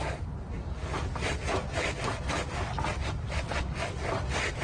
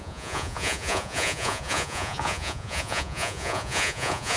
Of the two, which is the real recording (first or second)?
first